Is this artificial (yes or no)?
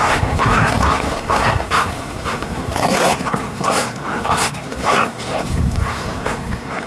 yes